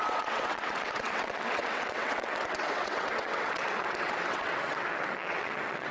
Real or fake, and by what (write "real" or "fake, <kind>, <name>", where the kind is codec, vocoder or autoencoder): fake, vocoder, WaveNeXt